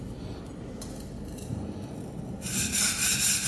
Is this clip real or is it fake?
fake